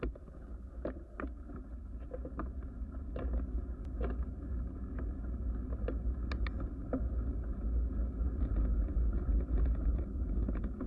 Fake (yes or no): no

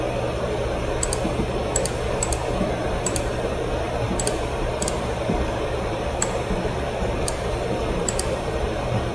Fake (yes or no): yes